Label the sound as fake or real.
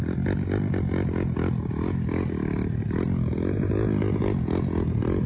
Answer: real